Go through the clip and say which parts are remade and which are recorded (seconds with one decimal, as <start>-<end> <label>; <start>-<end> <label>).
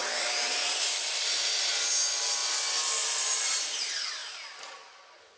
0.0-1.7 remade; 1.7-2.4 recorded; 2.4-3.4 remade; 3.4-4.2 recorded; 4.2-4.7 remade; 4.7-5.4 recorded